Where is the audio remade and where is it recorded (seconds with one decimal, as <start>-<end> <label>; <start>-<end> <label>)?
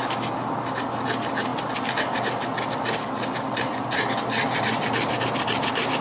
0.0-6.0 recorded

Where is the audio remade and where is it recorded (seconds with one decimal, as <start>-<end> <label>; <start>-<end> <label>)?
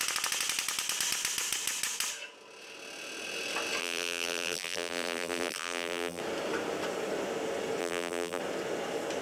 0.0-3.8 recorded; 3.8-6.2 remade; 6.2-7.8 recorded; 7.8-8.4 remade; 8.4-9.2 recorded